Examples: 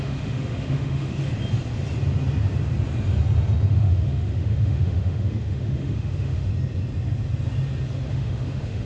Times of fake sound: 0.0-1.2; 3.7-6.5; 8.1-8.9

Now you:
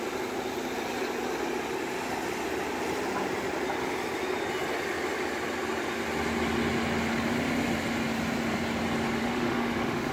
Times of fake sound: 9.2-10.1

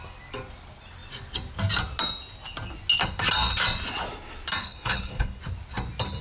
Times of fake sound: 4.6-5.4

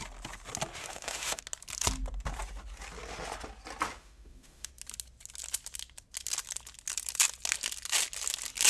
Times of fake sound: 0.8-1.4; 4.0-4.7

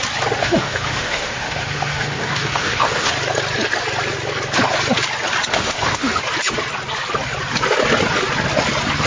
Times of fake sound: 0.4-3.1; 5.5-6.2

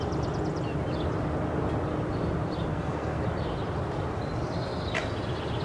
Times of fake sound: 2.7-3.2

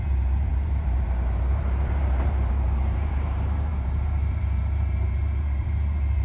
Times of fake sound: 0.0-6.2